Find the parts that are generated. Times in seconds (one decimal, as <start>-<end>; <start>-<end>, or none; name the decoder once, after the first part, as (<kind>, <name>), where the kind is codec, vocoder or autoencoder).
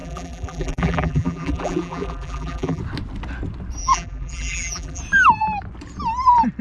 0.0-2.8 (vocoder, BigVGAN v2); 3.8-5.0